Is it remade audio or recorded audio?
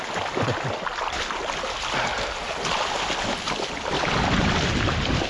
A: recorded